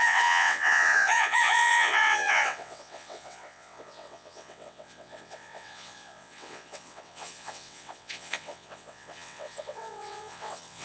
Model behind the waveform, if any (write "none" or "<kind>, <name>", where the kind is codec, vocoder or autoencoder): vocoder, WaveNeXt